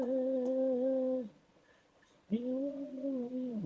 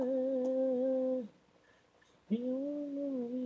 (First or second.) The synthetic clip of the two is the first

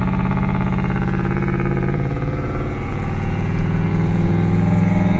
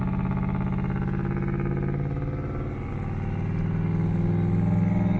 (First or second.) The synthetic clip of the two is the first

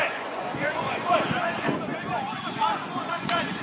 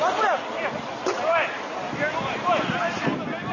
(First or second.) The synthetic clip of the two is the first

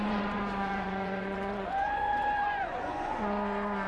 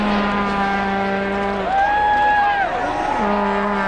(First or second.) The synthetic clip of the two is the first